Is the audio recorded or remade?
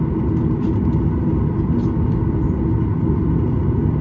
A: recorded